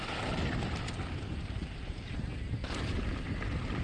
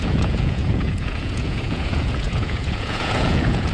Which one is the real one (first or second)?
first